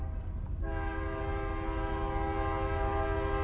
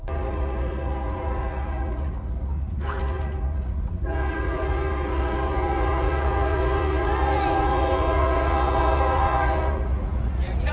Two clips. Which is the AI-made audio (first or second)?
second